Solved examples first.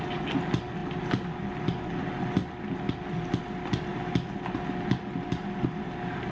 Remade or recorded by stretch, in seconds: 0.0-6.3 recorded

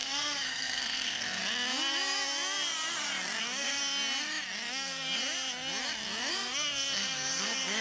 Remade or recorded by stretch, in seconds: 0.0-1.4 remade; 1.4-3.4 recorded; 3.4-3.8 remade; 3.8-4.7 recorded; 4.7-5.2 remade; 5.2-6.3 recorded; 6.3-7.8 remade

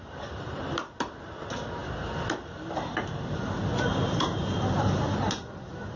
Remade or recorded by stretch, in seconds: 0.0-1.4 remade; 1.4-3.7 recorded; 3.7-6.0 remade